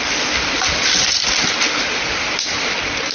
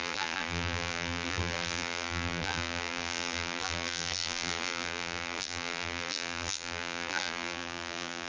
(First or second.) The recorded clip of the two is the first